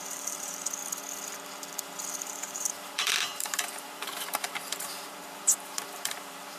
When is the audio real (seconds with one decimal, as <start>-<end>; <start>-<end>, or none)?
0.8-2.2